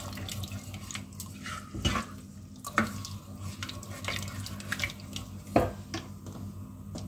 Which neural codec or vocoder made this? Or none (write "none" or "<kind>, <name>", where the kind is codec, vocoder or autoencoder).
none